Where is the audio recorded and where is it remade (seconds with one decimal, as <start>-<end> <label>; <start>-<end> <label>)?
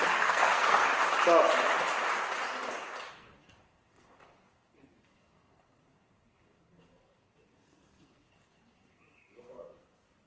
0.0-0.9 remade; 0.9-3.1 recorded; 3.1-10.3 remade